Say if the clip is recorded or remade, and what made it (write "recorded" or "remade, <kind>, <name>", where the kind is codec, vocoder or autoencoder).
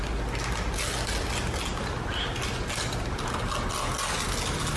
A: recorded